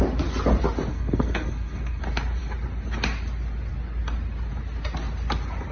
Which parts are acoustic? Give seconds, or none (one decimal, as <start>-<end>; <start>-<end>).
0.0-0.9; 2.0-5.7